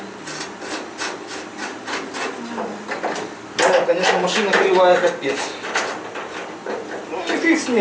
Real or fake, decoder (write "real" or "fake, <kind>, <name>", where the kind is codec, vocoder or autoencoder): real